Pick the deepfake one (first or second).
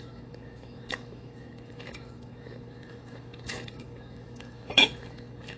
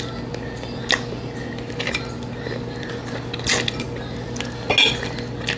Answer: first